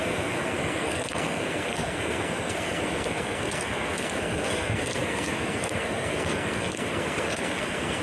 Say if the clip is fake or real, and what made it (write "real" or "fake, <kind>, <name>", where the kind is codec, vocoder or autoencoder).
fake, codec, SNAC